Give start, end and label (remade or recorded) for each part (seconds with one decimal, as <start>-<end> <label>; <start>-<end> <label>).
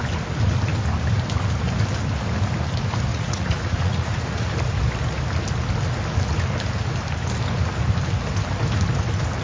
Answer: 0.0-3.1 recorded; 3.1-4.5 remade; 4.5-9.4 recorded